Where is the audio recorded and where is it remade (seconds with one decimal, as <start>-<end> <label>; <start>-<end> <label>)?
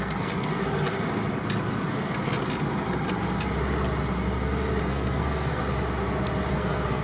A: 0.0-0.6 remade; 0.6-4.8 recorded; 4.8-5.6 remade; 5.6-6.5 recorded; 6.5-7.0 remade